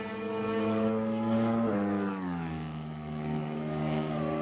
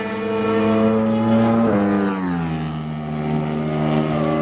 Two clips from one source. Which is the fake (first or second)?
first